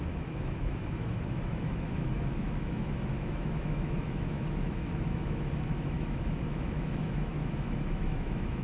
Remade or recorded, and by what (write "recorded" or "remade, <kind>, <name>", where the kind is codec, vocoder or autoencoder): remade, autoencoder, DAC-VAE